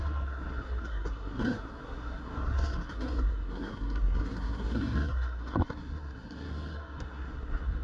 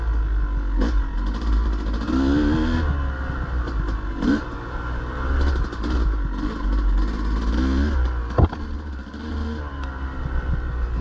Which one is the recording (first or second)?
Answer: second